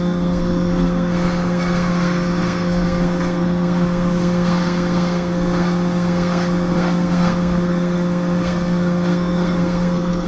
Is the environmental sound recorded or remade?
remade